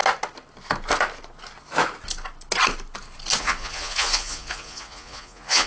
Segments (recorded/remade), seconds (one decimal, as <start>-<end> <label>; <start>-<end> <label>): 0.0-3.4 recorded; 3.4-5.7 remade